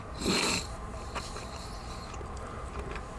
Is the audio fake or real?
fake